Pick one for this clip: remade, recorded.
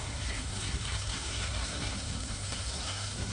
remade